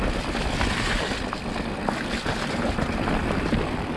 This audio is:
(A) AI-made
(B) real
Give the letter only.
B